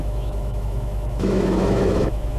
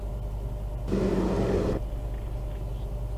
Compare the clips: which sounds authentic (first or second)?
second